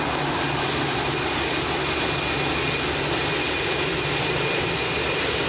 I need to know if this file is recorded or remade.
recorded